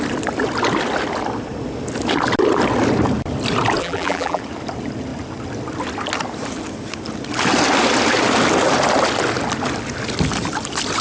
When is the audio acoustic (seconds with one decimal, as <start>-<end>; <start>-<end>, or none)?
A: 0.0-3.8; 4.4-11.0